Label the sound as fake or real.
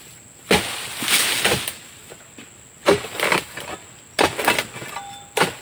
real